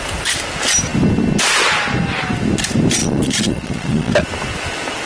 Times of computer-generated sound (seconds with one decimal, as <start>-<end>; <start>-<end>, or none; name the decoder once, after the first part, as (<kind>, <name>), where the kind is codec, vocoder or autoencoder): 3.0-4.1 (vocoder, Vocos)